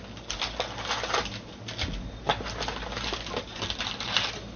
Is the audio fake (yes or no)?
no